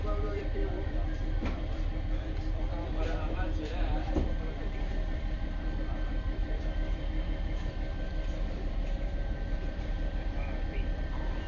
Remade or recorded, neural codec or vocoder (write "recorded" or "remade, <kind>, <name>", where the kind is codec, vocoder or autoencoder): remade, vocoder, BigVGAN v2